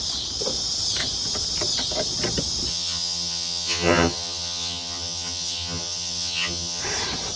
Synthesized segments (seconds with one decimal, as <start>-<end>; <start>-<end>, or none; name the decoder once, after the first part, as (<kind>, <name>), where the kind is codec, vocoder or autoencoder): 2.7-6.8 (vocoder, HiFi-GAN)